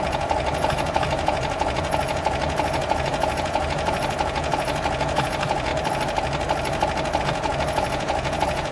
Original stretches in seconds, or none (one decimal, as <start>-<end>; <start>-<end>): 5.7-7.2